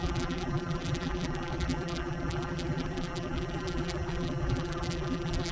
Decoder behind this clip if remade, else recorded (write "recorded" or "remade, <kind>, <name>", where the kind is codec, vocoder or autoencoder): remade, vocoder, BigVGAN v2